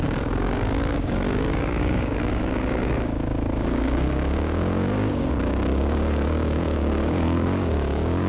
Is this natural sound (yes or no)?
no